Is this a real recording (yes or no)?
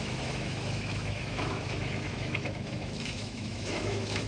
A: no